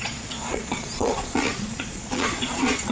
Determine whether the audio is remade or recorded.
remade